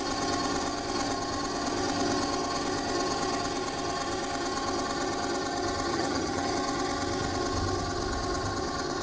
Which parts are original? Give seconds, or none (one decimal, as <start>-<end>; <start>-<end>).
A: 0.0-5.9; 6.5-9.0